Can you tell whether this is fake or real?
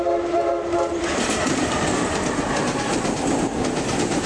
real